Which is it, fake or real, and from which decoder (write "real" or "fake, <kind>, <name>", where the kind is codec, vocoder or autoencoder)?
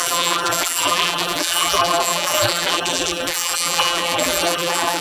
fake, vocoder, BigVGAN v2